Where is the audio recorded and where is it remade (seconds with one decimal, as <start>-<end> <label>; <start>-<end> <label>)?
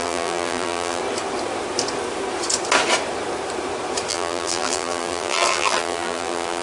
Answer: 0.0-1.0 remade; 1.0-4.1 recorded; 4.1-6.6 remade